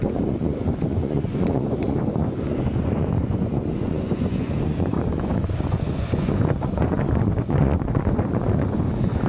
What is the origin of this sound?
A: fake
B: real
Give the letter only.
A